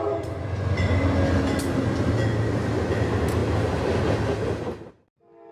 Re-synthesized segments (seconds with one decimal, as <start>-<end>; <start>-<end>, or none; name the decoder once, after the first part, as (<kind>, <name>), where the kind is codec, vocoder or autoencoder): none